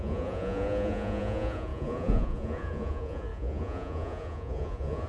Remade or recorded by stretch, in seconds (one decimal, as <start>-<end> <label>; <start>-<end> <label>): 0.0-5.1 remade

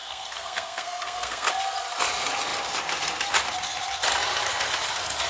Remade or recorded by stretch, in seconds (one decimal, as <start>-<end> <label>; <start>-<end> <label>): 0.0-1.5 remade; 1.5-5.3 recorded

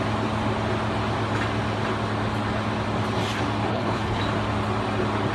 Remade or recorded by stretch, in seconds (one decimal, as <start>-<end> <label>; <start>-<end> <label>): 0.0-3.7 recorded; 3.7-4.2 remade; 4.2-5.3 recorded

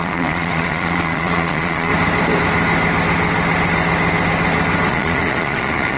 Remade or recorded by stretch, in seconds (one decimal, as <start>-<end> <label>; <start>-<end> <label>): 0.0-1.9 remade; 1.9-4.9 recorded; 4.9-6.0 remade

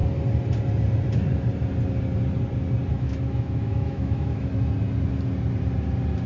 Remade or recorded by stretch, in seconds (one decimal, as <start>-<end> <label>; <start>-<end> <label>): 0.0-2.9 recorded; 2.9-4.5 remade; 4.5-6.3 recorded

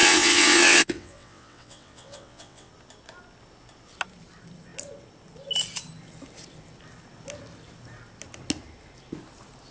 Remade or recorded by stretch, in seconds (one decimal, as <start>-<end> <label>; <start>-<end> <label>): 0.0-2.7 remade; 2.7-9.7 recorded

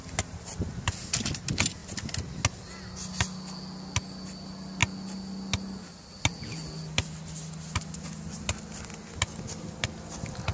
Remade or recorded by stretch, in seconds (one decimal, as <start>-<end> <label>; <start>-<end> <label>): 0.0-10.5 recorded

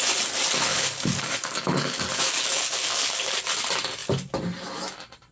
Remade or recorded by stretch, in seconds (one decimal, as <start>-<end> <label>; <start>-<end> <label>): 0.0-0.7 recorded; 0.7-3.4 remade; 3.4-5.3 recorded